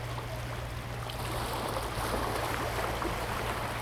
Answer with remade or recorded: recorded